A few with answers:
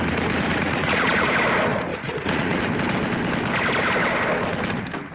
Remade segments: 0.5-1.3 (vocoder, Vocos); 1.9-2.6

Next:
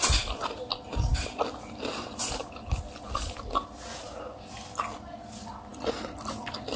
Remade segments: none

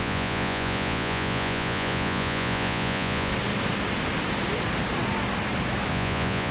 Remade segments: 0.0-3.3 (vocoder, Vocos); 5.9-6.5

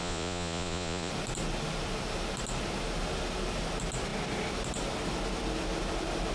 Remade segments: 0.0-1.1 (vocoder, Vocos)

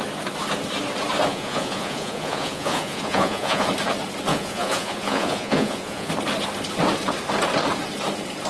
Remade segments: 1.3-3.7 (vocoder, Vocos); 4.3-6.1

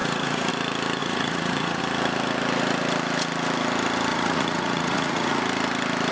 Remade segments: 0.0-0.5 (vocoder, Vocos); 1.0-1.8; 4.1-5.4

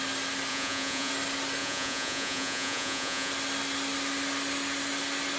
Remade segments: 0.5-1.1 (vocoder, Vocos); 1.6-3.3